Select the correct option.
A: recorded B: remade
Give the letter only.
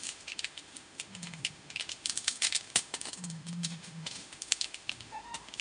B